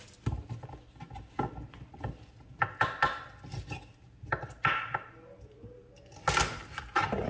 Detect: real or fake real